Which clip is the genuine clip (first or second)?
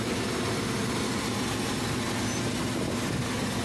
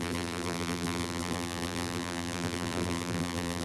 first